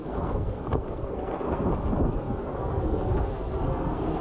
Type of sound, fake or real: fake